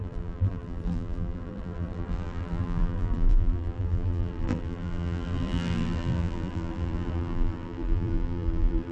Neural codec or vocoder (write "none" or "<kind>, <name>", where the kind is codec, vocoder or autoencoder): vocoder, BigVGAN v2